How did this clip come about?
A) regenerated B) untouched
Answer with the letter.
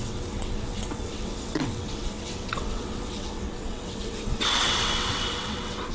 A